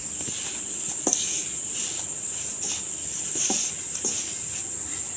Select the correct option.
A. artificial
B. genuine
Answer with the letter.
B